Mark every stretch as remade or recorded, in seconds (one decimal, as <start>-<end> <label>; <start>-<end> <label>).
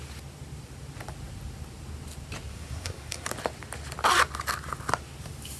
0.0-2.5 recorded; 2.5-3.3 remade; 3.3-5.6 recorded